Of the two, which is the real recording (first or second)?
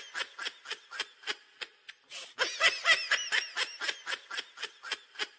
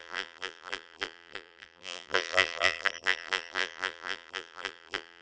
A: first